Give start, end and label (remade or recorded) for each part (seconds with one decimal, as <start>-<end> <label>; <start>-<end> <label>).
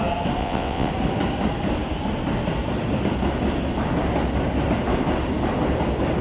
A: 0.0-0.4 recorded; 0.4-0.9 remade; 0.9-6.2 recorded